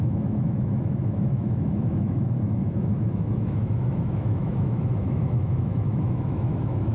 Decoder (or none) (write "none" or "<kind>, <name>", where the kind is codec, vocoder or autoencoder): autoencoder, DAC-VAE